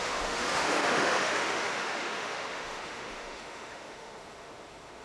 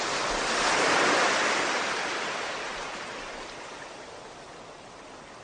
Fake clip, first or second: first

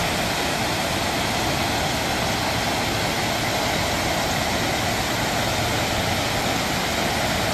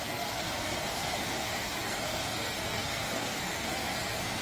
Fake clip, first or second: second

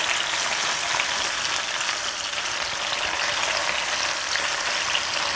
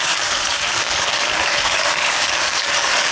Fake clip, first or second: second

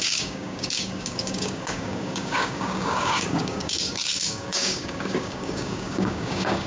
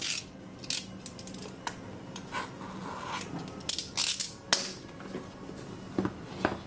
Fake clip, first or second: first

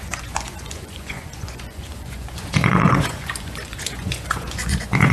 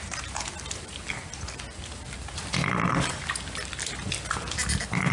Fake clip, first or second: first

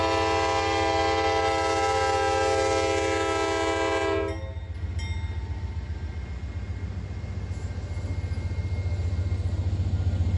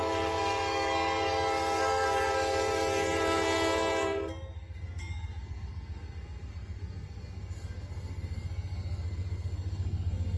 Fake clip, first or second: second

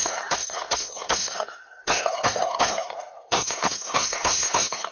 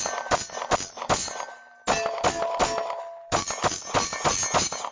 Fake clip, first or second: first